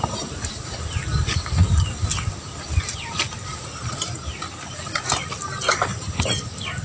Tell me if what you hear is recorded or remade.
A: recorded